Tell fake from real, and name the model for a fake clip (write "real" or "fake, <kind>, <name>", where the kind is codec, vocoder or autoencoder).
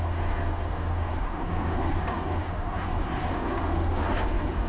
fake, autoencoder, DAC-VAE